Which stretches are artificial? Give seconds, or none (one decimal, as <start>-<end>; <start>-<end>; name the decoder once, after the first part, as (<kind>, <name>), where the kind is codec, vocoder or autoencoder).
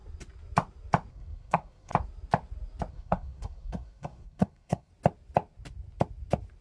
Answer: 1.1-1.9 (codec, SNAC); 2.9-4.9